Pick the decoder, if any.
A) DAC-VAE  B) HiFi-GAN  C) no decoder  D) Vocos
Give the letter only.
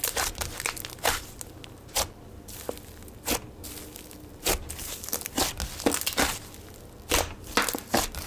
C